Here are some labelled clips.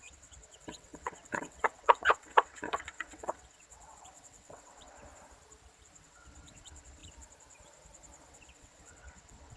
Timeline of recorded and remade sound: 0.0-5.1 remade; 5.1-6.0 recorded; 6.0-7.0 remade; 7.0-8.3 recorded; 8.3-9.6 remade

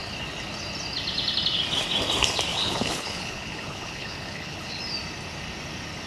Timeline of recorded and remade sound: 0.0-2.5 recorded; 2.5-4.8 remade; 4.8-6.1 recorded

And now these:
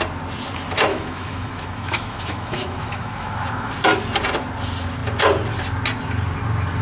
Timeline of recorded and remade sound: 0.0-0.9 recorded; 0.9-3.7 remade; 3.7-6.8 recorded